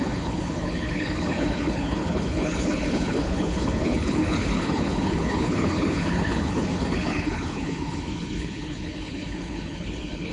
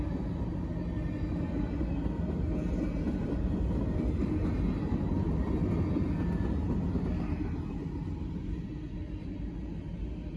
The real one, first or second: second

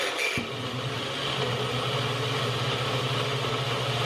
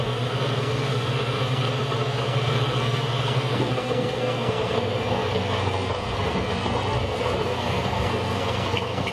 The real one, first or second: first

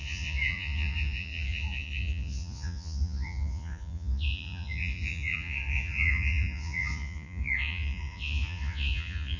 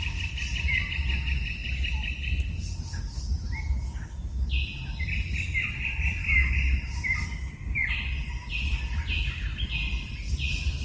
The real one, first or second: second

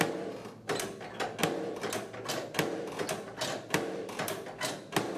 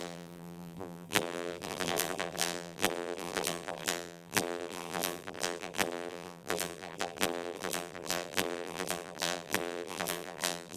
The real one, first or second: first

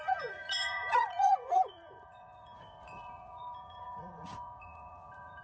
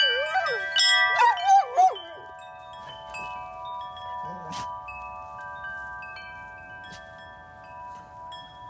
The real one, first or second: second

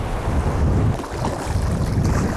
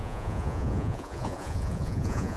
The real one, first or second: first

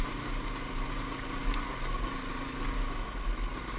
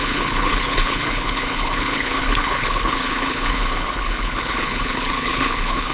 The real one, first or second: first